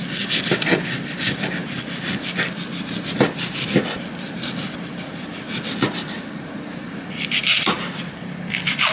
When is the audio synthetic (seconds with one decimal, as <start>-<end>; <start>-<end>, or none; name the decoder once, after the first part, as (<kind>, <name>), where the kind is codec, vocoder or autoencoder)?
none